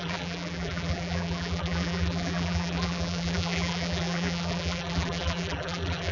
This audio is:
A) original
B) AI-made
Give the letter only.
B